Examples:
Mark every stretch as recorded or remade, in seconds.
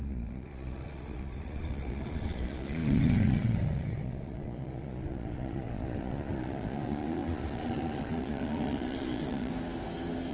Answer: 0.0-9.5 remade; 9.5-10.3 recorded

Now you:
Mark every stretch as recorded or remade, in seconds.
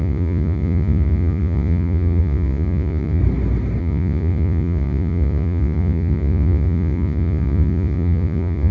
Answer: 0.0-3.2 remade; 3.2-3.8 recorded; 3.8-8.7 remade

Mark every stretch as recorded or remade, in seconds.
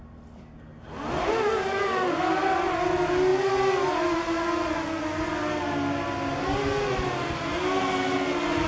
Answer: 0.0-8.7 recorded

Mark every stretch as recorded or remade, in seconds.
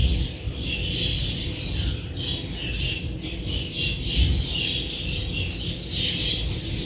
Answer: 0.0-6.9 recorded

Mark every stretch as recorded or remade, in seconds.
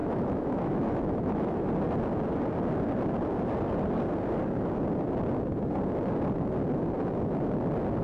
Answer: 0.0-1.7 remade; 1.7-8.0 recorded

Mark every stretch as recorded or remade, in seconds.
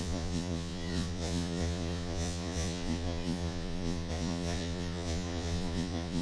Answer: 0.0-6.2 remade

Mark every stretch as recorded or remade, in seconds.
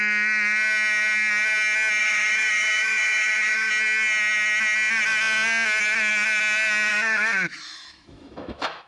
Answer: 0.0-2.0 recorded; 2.0-3.7 remade; 3.7-6.9 recorded; 6.9-8.9 remade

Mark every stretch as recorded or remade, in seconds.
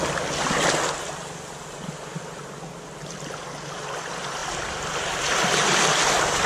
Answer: 0.0-6.5 recorded